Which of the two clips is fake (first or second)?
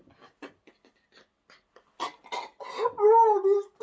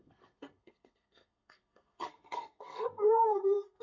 second